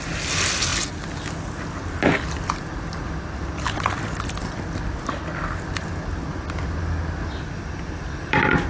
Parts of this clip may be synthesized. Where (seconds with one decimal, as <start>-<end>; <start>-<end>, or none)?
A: none